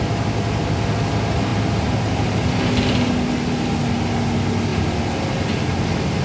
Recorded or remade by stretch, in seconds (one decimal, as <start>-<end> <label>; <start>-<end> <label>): 0.0-6.2 recorded